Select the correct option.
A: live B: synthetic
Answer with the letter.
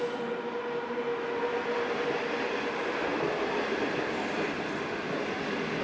A